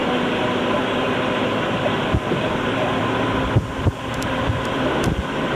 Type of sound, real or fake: fake